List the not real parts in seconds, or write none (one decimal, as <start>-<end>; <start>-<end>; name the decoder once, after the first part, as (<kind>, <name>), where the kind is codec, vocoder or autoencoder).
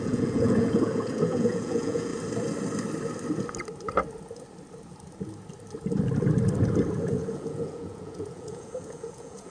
0.0-2.1 (vocoder, Vocos); 6.9-9.5